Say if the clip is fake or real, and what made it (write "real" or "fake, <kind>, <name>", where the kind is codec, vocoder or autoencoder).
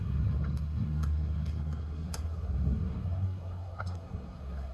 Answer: fake, codec, SNAC